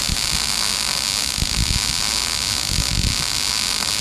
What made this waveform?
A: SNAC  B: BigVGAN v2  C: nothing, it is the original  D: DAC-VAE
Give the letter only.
C